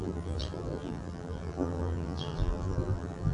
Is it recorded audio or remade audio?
remade